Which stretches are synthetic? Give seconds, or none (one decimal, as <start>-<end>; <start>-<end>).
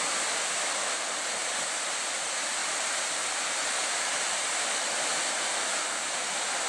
2.6-4.4